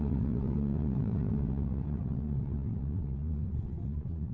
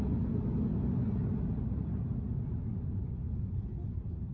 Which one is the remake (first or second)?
first